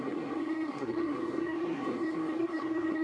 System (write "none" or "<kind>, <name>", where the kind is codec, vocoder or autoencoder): codec, SNAC